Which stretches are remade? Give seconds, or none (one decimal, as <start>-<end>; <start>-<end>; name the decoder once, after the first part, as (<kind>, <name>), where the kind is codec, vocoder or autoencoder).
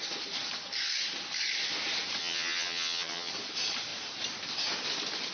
2.2-3.3 (vocoder, HiFi-GAN)